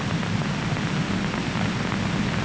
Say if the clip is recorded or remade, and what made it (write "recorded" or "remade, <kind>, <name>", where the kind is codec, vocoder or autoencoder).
recorded